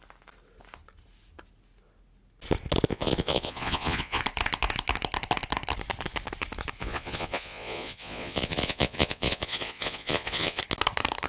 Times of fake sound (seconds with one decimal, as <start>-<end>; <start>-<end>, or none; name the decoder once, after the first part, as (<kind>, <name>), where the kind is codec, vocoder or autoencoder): 2.9-4.2 (vocoder, Vocos); 6.8-10.6